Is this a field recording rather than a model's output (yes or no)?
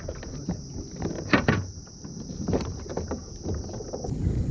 yes